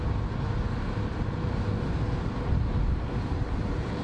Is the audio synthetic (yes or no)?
no